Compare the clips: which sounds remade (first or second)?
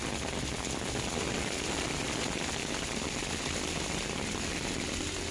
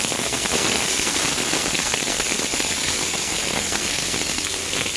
second